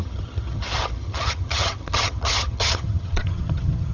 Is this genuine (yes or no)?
no